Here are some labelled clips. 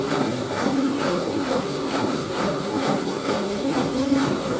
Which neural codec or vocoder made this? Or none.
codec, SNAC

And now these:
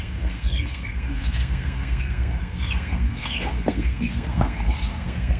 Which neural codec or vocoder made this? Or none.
codec, SNAC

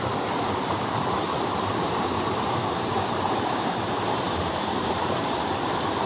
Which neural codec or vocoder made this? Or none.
vocoder, BigVGAN v2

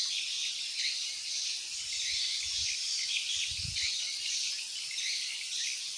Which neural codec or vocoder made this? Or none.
none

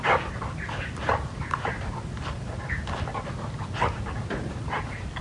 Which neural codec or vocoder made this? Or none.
none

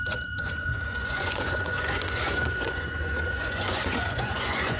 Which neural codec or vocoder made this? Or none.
vocoder, Vocos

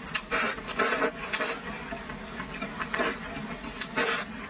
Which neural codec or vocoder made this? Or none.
none